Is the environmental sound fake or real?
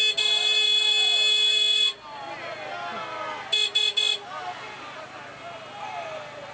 real